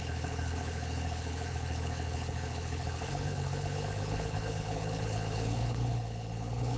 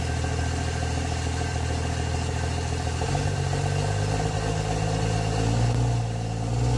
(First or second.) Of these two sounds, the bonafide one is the second